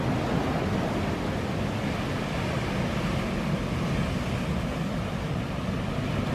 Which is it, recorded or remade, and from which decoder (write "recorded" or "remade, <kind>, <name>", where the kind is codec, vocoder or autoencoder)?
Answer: recorded